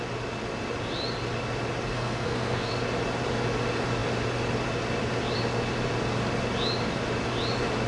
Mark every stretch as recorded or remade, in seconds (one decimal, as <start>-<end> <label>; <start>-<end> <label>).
0.0-1.9 recorded; 1.9-2.7 remade; 2.7-7.9 recorded